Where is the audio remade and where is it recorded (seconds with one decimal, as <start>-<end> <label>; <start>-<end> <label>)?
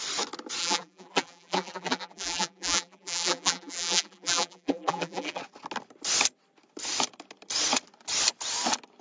0.0-0.6 recorded; 0.6-5.4 remade; 5.4-9.0 recorded